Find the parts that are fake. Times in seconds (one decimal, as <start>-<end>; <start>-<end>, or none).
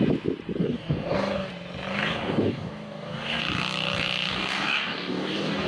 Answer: 0.6-1.5; 1.9-3.4; 4.3-5.7